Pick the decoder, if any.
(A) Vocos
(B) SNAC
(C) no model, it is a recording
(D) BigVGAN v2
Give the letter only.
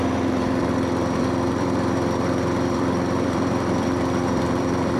D